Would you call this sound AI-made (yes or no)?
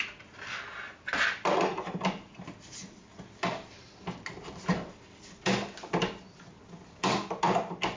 no